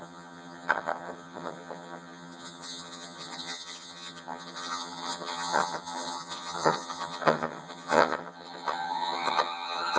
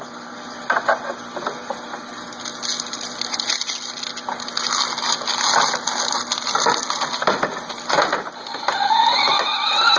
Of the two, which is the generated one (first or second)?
first